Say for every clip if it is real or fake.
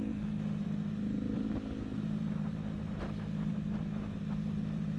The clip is real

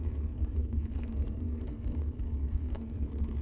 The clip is fake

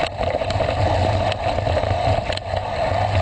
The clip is real